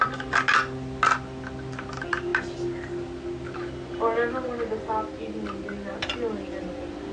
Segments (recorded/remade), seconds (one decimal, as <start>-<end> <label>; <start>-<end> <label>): 0.0-7.1 recorded